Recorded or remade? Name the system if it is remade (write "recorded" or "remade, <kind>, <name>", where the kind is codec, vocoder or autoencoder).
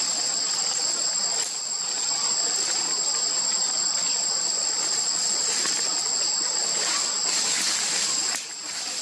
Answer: recorded